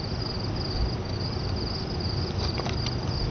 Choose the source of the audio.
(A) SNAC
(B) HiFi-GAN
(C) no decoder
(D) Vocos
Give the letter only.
C